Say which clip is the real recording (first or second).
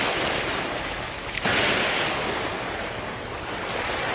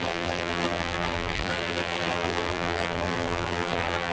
first